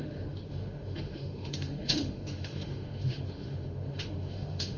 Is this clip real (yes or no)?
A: no